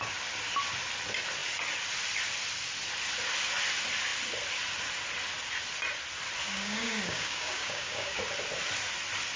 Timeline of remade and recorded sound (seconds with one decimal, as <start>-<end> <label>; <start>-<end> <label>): 0.0-6.4 recorded; 6.4-8.2 remade; 8.2-9.4 recorded